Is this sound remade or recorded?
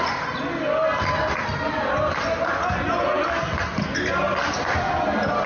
recorded